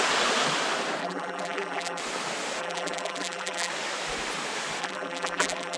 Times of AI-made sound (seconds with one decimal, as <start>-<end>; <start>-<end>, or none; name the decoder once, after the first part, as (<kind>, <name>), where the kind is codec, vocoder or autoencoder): 1.0-2.0 (vocoder, BigVGAN v2); 2.6-3.7; 4.8-5.8